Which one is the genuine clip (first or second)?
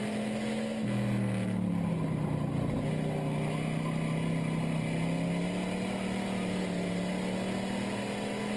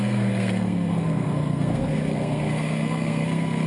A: first